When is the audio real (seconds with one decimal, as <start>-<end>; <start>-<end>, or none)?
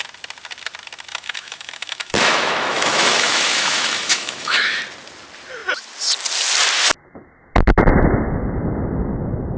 0.0-1.1; 4.8-9.6